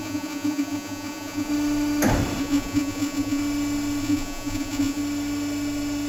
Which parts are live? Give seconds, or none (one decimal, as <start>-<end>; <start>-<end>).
1.5-2.4; 3.4-4.0; 5.0-6.1